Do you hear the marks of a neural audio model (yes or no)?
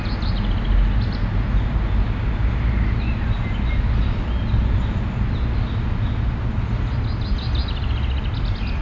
no